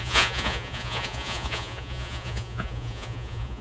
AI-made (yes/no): yes